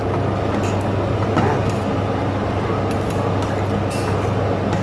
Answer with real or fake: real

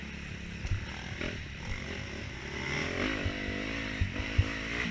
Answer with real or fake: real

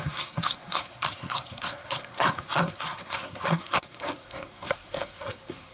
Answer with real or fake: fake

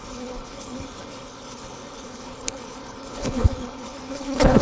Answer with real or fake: fake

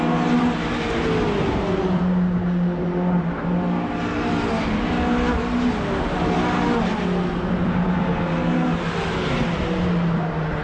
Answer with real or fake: real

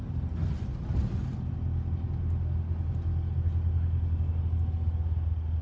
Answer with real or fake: real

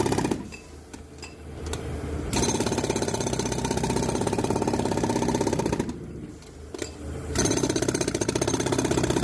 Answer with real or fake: real